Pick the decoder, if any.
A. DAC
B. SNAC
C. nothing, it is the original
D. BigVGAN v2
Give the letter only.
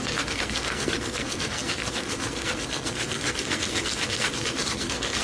B